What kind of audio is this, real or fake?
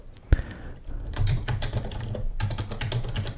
real